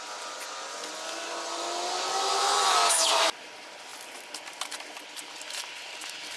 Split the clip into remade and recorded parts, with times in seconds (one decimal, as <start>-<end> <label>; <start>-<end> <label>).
0.0-2.4 recorded; 2.4-3.1 remade; 3.1-6.4 recorded